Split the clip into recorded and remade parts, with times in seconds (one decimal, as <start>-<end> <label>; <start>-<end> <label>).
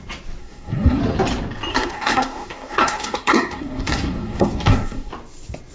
0.0-0.4 recorded; 0.4-1.0 remade; 1.0-1.7 recorded; 1.7-5.1 remade; 5.1-5.7 recorded